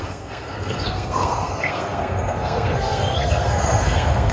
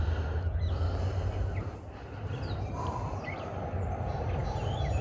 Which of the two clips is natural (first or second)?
second